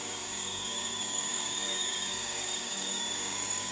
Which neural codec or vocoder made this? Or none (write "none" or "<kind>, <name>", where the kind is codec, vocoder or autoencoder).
codec, DAC